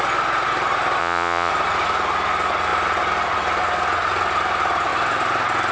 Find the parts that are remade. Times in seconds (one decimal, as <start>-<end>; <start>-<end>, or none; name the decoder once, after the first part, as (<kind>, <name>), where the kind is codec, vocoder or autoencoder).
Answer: 1.0-1.5 (vocoder, Vocos)